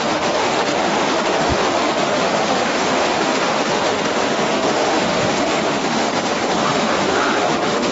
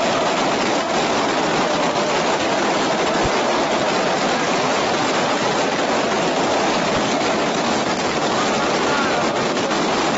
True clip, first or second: second